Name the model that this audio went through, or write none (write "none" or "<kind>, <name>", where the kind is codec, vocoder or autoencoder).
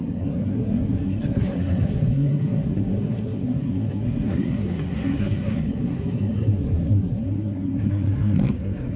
codec, SNAC